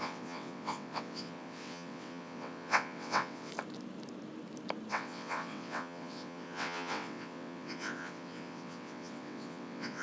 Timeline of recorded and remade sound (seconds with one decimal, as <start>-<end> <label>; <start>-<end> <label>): 0.0-3.5 remade; 3.5-4.9 recorded; 4.9-10.0 remade